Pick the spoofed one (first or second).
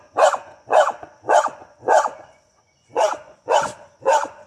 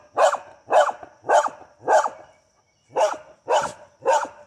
first